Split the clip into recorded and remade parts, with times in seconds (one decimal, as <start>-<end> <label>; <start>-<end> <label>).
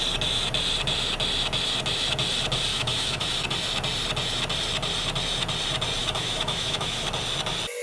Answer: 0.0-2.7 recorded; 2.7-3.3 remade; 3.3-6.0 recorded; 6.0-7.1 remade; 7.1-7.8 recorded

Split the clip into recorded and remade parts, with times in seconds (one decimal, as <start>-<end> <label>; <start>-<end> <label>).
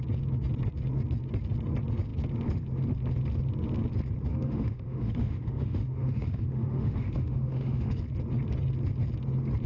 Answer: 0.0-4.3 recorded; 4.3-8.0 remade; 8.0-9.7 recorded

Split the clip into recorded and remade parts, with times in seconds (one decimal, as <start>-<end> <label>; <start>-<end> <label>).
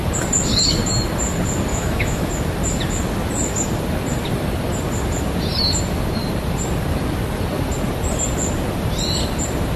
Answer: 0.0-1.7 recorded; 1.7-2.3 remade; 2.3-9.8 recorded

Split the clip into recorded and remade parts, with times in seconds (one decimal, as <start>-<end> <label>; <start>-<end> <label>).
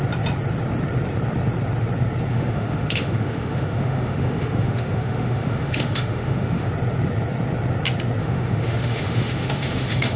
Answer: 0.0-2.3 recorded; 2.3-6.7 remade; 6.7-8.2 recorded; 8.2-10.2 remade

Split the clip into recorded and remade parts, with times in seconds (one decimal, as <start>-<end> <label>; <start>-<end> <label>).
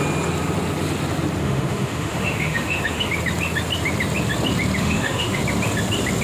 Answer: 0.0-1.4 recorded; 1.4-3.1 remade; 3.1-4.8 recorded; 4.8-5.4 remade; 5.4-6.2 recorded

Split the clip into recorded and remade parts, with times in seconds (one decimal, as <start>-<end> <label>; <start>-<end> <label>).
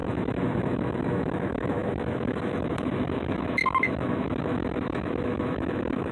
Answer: 0.0-6.1 remade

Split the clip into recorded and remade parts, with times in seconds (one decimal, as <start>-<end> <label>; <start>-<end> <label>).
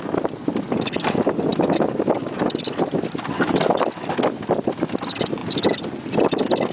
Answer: 0.0-6.7 recorded